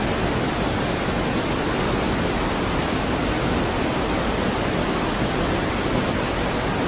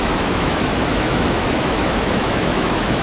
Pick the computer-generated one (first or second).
second